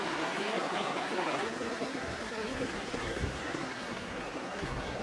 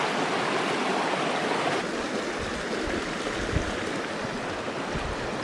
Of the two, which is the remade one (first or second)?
first